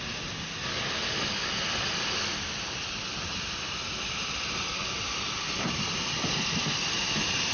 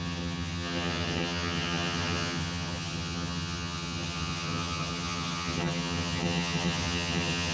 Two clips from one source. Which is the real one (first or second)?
first